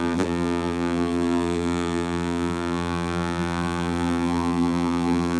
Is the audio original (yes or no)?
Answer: no